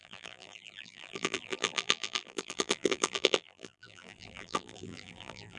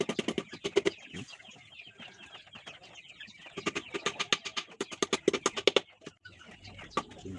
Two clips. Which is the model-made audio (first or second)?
first